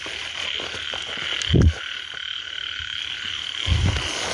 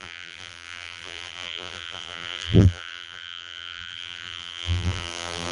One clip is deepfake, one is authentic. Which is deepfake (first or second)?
second